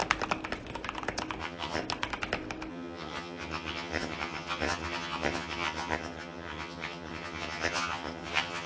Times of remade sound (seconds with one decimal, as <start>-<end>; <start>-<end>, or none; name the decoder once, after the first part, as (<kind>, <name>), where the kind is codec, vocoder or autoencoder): 1.4-1.8 (vocoder, HiFi-GAN); 2.7-8.7